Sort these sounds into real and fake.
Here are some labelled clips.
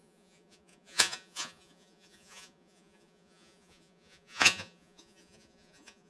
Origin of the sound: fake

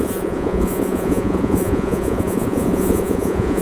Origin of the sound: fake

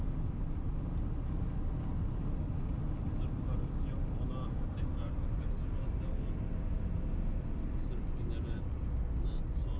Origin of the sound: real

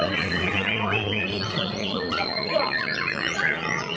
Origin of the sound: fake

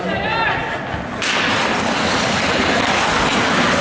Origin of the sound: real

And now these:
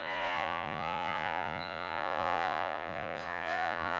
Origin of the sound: fake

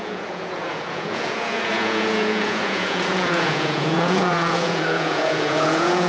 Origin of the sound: fake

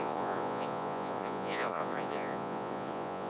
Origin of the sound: fake